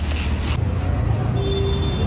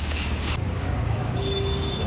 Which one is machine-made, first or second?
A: second